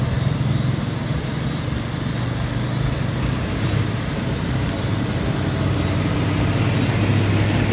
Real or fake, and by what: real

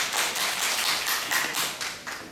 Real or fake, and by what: real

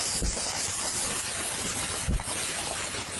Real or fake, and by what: real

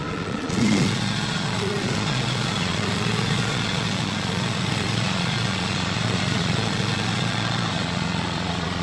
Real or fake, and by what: fake, vocoder, Vocos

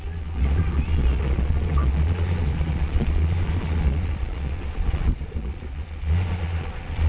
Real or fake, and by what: fake, vocoder, Vocos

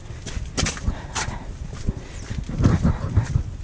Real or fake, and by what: real